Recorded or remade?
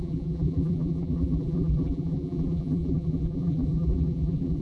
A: remade